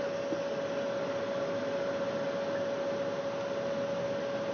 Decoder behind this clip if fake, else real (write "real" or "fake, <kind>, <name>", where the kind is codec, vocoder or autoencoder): real